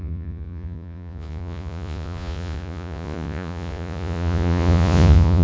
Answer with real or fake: fake